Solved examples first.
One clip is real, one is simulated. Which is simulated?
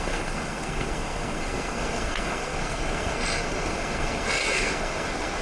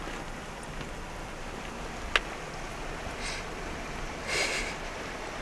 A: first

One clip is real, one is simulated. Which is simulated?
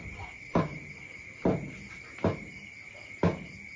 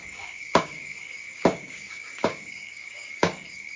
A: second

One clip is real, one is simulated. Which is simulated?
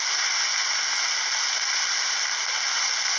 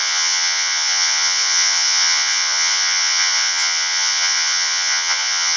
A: second